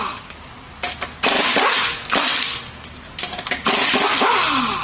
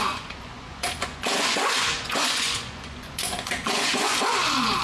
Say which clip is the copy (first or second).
second